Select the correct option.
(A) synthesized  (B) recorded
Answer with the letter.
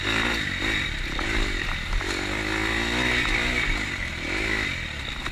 B